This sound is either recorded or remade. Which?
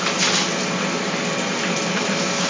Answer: recorded